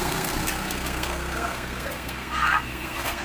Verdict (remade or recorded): remade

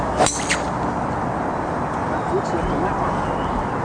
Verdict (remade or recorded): recorded